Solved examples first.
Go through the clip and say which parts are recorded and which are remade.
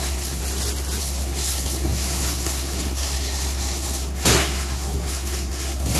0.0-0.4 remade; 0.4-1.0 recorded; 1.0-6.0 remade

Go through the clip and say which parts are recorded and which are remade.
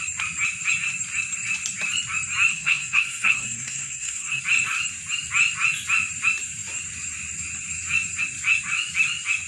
0.0-2.5 recorded; 2.5-4.4 remade; 4.4-9.5 recorded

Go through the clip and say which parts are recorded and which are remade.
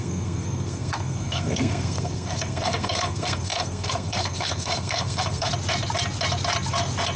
0.0-5.5 remade; 5.5-7.2 recorded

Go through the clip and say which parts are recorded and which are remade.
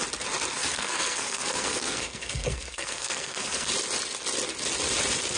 0.0-0.5 recorded; 0.5-3.7 remade; 3.7-5.4 recorded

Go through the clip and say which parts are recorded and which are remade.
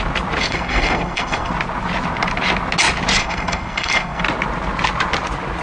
0.0-0.4 recorded; 0.4-1.5 remade; 1.5-3.2 recorded; 3.2-4.2 remade; 4.2-5.6 recorded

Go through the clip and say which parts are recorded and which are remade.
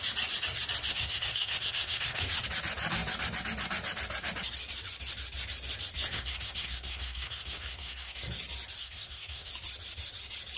0.0-0.9 recorded; 0.9-2.2 remade; 2.2-6.1 recorded; 6.1-8.2 remade; 8.2-8.8 recorded; 8.8-9.5 remade; 9.5-10.6 recorded